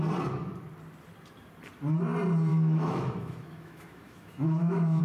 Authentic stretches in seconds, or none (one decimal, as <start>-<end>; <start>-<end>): 0.0-2.5